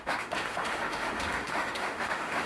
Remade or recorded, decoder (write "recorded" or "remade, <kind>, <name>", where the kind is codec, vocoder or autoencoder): remade, autoencoder, DAC-VAE